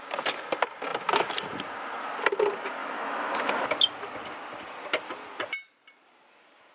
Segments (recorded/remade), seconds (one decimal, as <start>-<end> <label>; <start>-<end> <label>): 0.0-2.8 recorded; 2.8-3.5 remade; 3.5-6.7 recorded